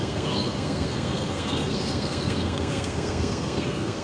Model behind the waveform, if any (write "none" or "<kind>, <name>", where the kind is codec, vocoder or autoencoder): codec, SNAC